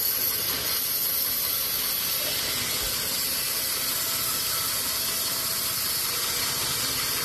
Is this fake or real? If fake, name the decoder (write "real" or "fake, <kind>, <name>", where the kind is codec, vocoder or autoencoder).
real